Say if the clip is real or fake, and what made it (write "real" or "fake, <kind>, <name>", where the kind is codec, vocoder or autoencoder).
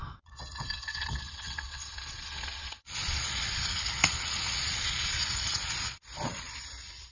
fake, vocoder, Vocos